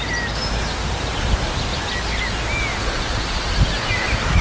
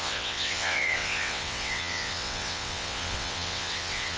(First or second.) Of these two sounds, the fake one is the second